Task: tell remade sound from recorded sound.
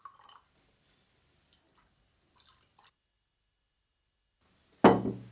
recorded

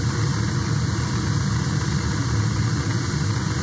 recorded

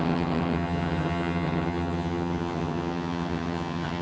remade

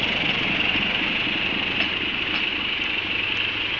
recorded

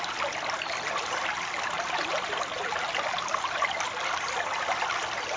recorded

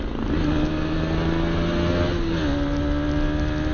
recorded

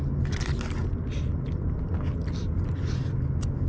recorded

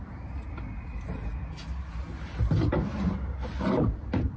recorded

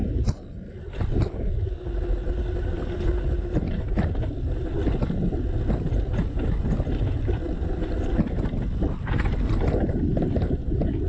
recorded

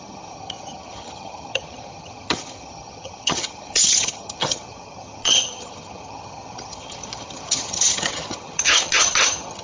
remade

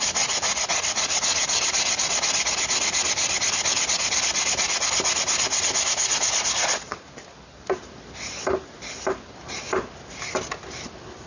recorded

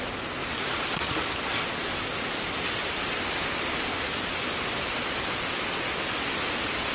recorded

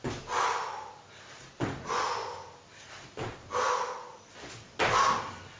recorded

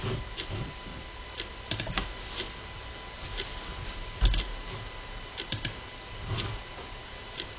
recorded